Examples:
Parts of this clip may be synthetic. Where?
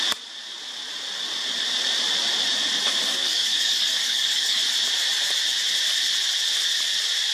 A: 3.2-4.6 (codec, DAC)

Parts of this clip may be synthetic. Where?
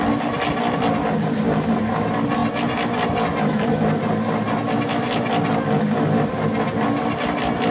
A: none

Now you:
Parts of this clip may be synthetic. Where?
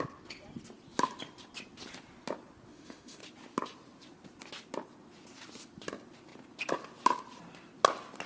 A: 2.7-3.2 (autoencoder, DAC-VAE)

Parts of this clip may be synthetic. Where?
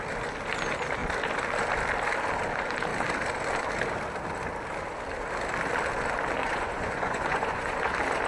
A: 6.4-7.8 (vocoder, Vocos)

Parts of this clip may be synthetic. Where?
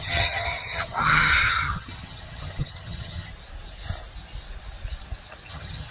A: 0.0-3.3 (vocoder, HiFi-GAN); 5.5-5.9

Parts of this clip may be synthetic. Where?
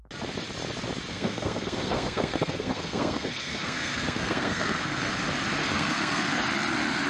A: 1.1-5.1 (codec, SNAC); 5.6-6.4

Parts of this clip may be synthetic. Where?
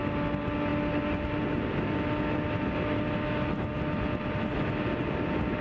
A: none